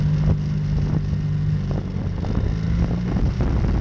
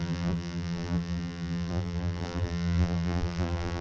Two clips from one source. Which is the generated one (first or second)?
second